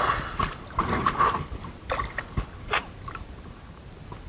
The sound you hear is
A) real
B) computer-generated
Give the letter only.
A